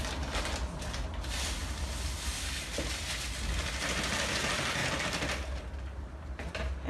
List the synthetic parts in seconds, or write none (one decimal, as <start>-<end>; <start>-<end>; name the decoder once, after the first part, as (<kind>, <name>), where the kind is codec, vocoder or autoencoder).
none